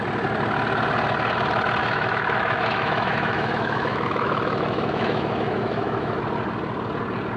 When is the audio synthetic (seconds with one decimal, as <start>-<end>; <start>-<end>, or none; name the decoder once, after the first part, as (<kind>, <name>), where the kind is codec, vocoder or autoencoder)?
1.8-6.2 (autoencoder, DAC-VAE)